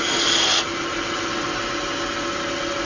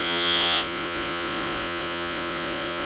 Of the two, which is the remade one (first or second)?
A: second